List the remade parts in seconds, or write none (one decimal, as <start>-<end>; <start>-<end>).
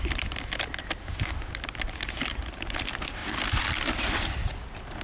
1.0-1.5